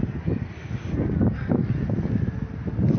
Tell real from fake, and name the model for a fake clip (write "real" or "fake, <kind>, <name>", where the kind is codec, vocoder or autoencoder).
real